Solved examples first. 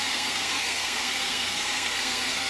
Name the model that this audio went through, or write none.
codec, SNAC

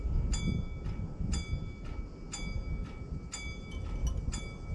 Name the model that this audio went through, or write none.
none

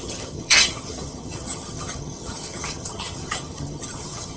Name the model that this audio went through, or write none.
vocoder, HiFi-GAN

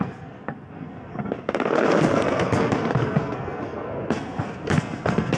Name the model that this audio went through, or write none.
codec, SNAC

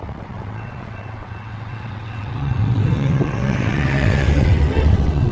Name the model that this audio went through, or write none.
vocoder, WaveNeXt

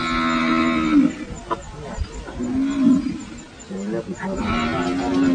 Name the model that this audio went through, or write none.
none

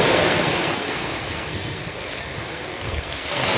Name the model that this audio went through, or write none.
codec, SNAC